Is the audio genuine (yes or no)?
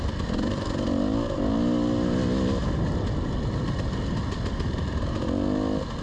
yes